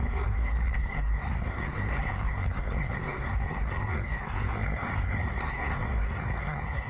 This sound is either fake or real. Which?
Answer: fake